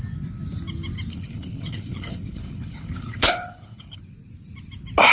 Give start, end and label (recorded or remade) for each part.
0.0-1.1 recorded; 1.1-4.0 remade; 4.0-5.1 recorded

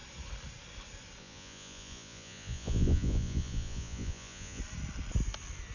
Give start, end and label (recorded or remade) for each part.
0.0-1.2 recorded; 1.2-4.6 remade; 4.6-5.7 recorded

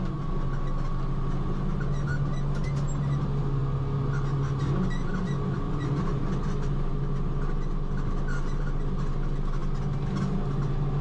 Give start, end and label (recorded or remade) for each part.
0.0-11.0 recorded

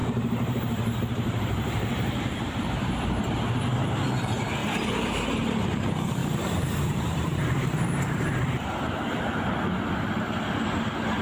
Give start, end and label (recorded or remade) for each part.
0.0-3.2 remade; 3.2-4.6 recorded; 4.6-5.5 remade; 5.5-6.2 recorded; 6.2-9.2 remade; 9.2-11.2 recorded

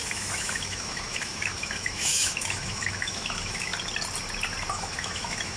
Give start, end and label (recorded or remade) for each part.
0.0-3.7 remade; 3.7-4.7 recorded; 4.7-5.6 remade

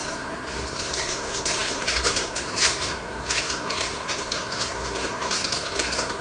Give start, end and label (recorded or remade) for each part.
0.0-6.2 remade